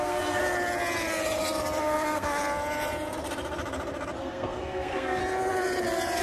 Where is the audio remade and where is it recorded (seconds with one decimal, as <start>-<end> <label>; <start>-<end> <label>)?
0.0-0.4 remade; 0.4-1.8 recorded; 1.8-2.4 remade; 2.4-4.2 recorded; 4.2-5.2 remade; 5.2-6.2 recorded